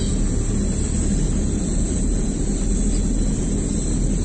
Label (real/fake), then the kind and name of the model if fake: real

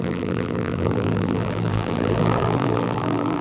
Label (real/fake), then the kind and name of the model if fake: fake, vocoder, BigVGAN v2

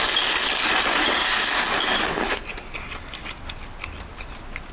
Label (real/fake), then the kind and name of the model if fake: real